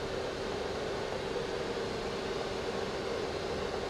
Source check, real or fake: real